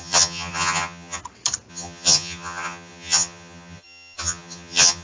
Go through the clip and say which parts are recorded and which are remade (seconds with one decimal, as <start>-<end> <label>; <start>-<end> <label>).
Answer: 0.0-1.2 remade; 1.2-1.7 recorded; 1.7-5.0 remade